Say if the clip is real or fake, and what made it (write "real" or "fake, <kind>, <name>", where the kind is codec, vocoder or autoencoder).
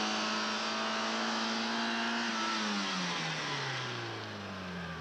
real